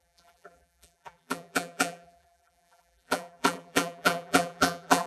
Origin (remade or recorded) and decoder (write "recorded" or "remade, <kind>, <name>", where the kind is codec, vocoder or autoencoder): remade, vocoder, BigVGAN v2